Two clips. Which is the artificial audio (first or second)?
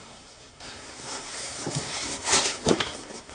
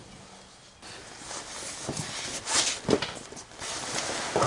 first